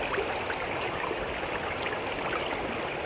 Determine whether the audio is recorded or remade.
recorded